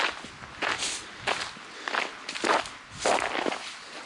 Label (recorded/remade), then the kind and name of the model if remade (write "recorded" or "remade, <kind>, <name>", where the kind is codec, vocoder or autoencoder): recorded